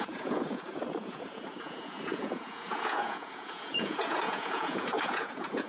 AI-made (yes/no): yes